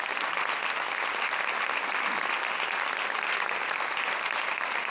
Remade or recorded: recorded